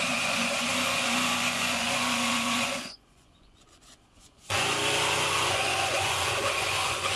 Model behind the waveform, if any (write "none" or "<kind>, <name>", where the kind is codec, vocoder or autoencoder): vocoder, Vocos